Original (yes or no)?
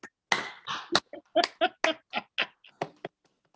yes